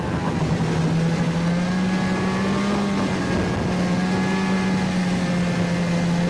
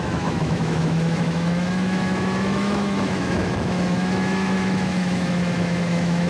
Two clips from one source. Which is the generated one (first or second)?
second